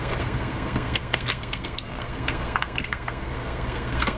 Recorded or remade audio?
remade